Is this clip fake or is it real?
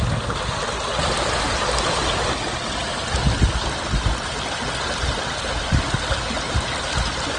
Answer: real